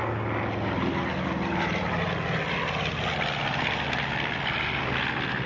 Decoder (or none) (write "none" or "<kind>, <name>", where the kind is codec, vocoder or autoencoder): none